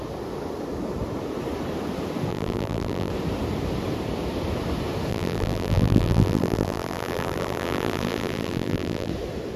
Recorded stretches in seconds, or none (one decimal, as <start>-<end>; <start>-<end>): 0.0-2.3; 3.1-5.1; 9.1-9.6